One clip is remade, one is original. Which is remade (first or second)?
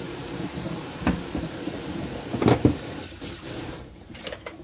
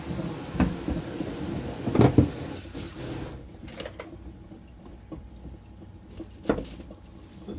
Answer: first